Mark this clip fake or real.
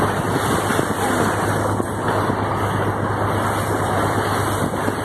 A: real